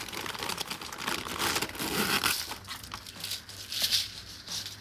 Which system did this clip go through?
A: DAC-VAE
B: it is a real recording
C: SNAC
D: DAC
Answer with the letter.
B